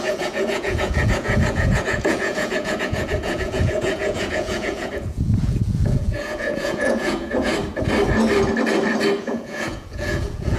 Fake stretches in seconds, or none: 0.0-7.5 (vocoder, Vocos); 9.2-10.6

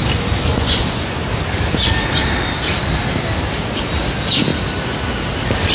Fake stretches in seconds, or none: 0.5-1.2 (vocoder, Vocos)

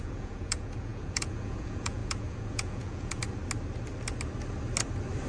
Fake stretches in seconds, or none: 0.0-3.2 (vocoder, Vocos)

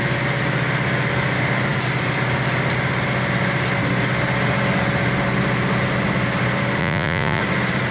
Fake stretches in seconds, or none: 6.8-7.4 (vocoder, Vocos)